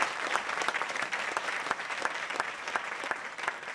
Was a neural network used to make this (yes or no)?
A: yes